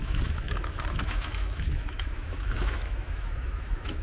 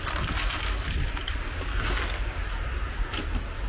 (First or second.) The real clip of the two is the second